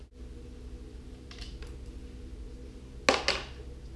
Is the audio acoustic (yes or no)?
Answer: yes